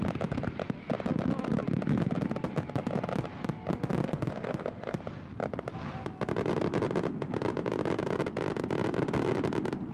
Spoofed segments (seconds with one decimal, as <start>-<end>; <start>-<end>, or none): 4.0-5.0